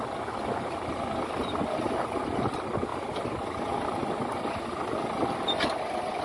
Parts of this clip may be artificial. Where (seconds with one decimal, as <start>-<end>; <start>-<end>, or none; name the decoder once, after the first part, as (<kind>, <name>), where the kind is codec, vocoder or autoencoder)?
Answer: none